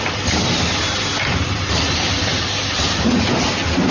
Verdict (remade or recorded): recorded